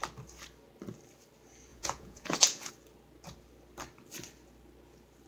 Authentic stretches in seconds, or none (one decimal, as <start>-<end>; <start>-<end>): 0.0-1.7; 2.7-5.3

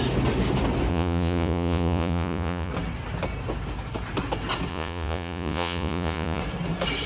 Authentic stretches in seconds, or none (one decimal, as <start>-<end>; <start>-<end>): 0.0-0.9; 2.7-4.7; 6.4-7.1

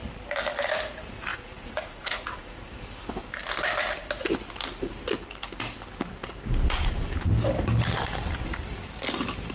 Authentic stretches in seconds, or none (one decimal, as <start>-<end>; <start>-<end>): 0.0-1.3; 2.8-9.5

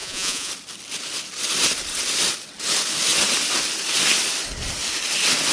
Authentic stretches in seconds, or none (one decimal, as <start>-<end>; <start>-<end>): 0.5-5.5

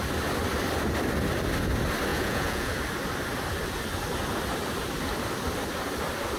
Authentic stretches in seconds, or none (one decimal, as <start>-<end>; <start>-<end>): 0.0-2.1; 2.8-6.4